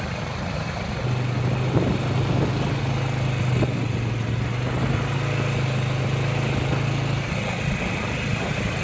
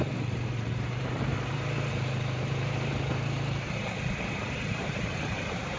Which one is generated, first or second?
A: second